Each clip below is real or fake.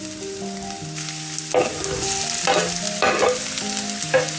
real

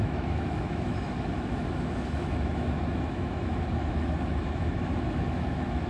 fake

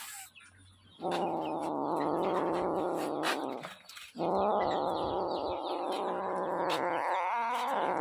real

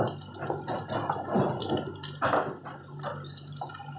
real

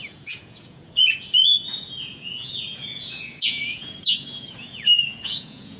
fake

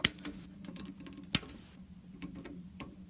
real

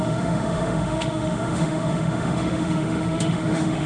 fake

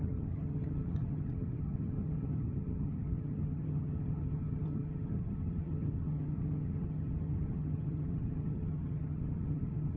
fake